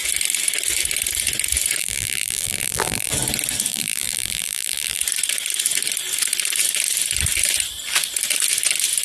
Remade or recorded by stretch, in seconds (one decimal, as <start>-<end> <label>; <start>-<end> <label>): 0.0-1.8 recorded; 1.8-3.1 remade; 3.1-3.7 recorded; 3.7-5.0 remade; 5.0-9.0 recorded